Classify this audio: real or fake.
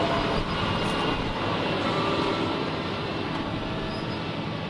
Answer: real